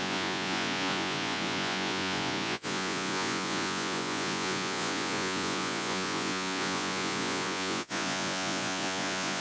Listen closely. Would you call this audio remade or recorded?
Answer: remade